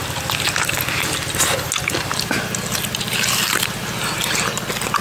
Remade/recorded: recorded